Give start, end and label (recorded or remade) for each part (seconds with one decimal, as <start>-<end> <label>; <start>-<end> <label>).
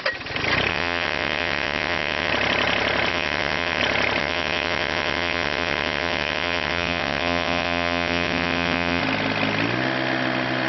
0.0-0.7 recorded; 0.7-2.3 remade; 2.3-3.1 recorded; 3.1-3.8 remade; 3.8-4.2 recorded; 4.2-9.0 remade; 9.0-10.7 recorded